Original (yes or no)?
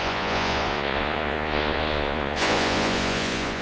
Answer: no